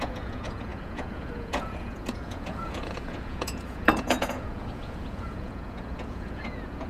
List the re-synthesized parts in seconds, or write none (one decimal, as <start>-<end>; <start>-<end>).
0.0-6.9